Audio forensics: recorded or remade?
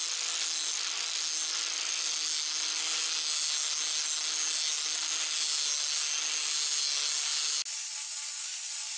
recorded